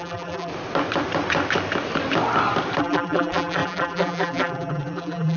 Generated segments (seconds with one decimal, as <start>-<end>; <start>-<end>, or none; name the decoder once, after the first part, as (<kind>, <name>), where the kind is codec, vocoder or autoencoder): 0.0-0.5 (vocoder, BigVGAN v2); 2.8-5.4